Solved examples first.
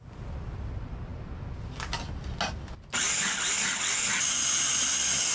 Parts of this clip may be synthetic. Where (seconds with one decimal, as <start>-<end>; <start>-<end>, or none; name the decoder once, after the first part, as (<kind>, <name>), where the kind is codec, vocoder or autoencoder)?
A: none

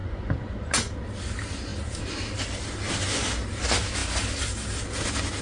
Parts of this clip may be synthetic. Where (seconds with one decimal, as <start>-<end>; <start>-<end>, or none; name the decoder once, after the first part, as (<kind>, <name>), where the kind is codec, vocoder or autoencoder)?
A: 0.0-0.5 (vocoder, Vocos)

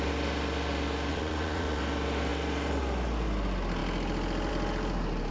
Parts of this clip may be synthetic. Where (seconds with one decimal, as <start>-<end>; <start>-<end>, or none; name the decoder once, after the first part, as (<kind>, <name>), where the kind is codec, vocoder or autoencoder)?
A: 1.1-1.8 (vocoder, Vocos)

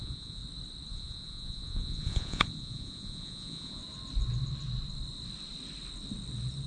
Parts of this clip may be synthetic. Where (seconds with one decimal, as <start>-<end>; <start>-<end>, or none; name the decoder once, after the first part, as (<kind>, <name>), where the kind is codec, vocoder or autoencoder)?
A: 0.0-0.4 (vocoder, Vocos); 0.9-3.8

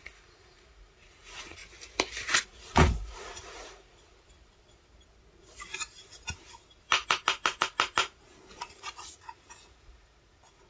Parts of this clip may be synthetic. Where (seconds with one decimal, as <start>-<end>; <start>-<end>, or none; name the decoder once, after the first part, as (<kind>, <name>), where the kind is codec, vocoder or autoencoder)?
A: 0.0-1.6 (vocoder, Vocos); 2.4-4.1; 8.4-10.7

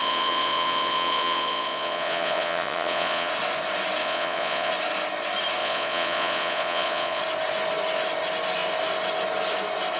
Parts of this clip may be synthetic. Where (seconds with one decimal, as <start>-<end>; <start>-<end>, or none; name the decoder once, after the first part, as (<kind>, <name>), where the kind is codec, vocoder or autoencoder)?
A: 0.0-3.3 (vocoder, Vocos); 4.0-4.7; 5.6-7.2

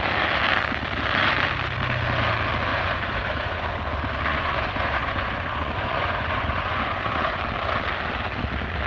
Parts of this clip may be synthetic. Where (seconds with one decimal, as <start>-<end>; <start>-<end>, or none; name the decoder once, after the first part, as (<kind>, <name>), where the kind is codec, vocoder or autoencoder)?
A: 2.7-3.7 (vocoder, Vocos); 4.3-7.4